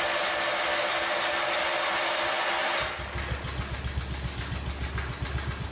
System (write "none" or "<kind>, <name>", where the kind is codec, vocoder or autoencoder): none